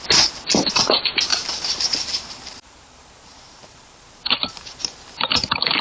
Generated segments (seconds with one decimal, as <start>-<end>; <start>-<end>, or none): 1.3-4.8